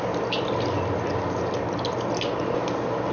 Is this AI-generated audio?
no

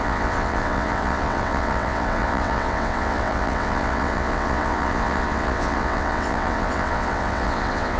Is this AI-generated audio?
yes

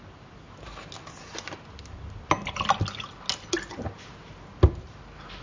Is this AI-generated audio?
no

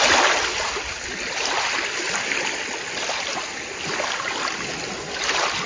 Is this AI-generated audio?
no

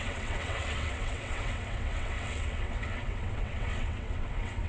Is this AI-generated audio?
yes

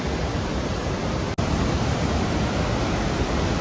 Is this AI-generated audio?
no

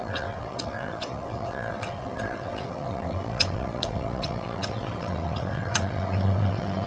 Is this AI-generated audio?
yes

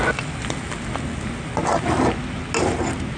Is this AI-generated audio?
no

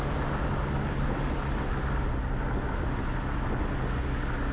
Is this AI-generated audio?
no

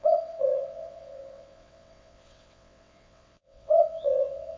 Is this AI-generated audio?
yes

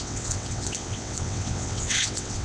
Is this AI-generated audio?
yes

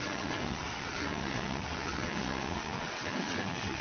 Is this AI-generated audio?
yes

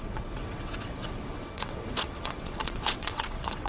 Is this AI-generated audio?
yes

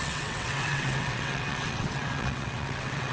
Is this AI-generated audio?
yes